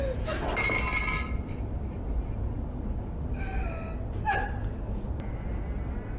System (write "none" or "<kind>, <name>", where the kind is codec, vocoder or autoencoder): none